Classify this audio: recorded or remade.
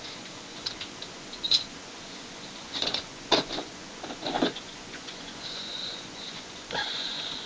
remade